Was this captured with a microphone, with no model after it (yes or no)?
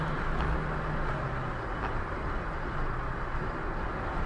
yes